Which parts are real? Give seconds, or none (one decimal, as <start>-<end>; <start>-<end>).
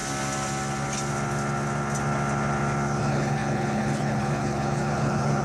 0.0-3.0